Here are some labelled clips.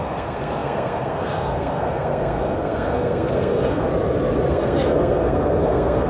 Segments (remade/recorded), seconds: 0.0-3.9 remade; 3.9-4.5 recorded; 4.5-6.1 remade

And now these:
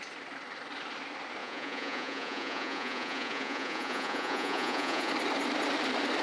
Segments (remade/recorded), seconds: 0.0-1.4 recorded; 1.4-5.1 remade; 5.1-6.2 recorded

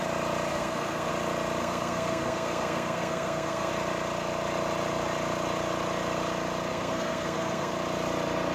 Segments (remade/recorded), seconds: 0.0-0.5 recorded; 0.5-1.1 remade; 1.1-1.6 recorded; 1.6-3.7 remade; 3.7-6.7 recorded; 6.7-7.7 remade; 7.7-8.5 recorded

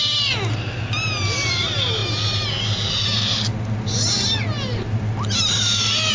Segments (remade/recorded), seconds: 0.0-6.1 recorded

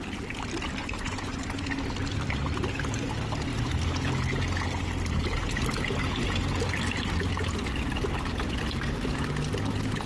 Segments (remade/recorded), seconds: 0.0-0.8 recorded; 0.8-1.6 remade; 1.6-10.1 recorded

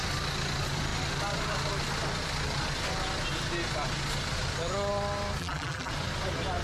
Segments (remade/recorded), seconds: 0.0-5.4 recorded; 5.4-5.9 remade; 5.9-6.6 recorded